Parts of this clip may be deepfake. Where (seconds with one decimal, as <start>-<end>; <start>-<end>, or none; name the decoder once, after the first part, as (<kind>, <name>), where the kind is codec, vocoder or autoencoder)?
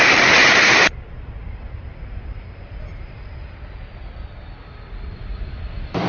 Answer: 0.4-4.1 (vocoder, BigVGAN v2)